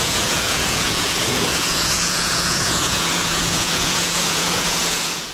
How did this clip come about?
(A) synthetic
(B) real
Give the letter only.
A